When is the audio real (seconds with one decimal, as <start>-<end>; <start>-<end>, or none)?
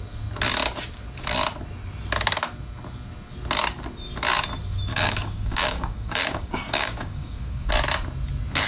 0.0-4.9; 7.7-8.7